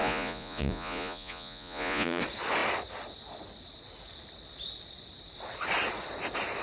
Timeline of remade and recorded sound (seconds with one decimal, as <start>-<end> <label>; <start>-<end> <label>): 0.0-2.2 remade; 2.2-6.6 recorded